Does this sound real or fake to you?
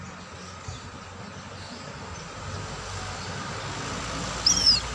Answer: real